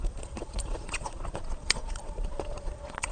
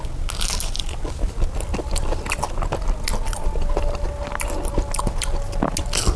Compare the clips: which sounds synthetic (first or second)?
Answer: first